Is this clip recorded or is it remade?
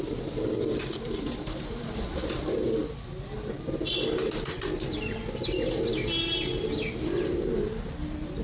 recorded